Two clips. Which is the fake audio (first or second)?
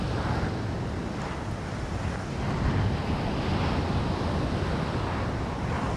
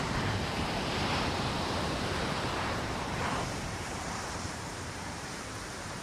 second